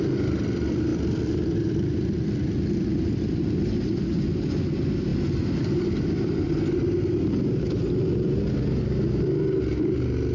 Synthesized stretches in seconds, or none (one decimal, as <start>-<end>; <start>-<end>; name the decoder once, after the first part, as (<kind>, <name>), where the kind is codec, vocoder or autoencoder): none

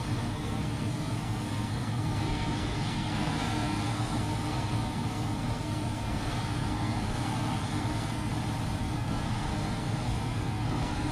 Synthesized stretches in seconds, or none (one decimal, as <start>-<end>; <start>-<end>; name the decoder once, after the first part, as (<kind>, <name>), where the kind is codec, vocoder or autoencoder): 0.0-8.3 (codec, SNAC); 8.8-11.1

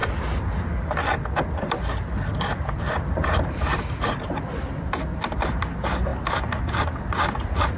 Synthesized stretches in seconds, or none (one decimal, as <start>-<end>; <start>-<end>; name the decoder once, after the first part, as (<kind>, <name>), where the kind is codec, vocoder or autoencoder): none